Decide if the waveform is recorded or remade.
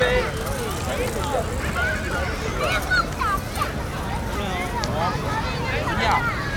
recorded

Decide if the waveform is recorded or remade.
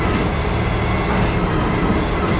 recorded